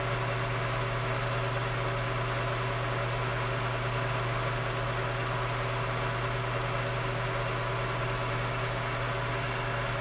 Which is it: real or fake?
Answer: real